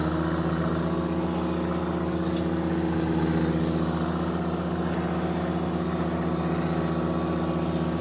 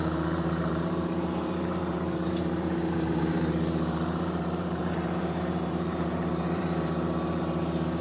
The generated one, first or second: second